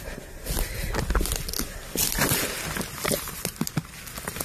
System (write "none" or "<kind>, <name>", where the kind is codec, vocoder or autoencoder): none